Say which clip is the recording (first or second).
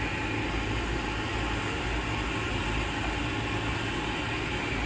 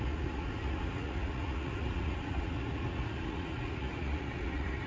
first